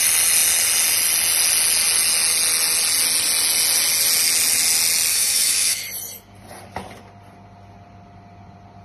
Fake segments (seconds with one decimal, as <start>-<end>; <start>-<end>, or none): 5.1-5.8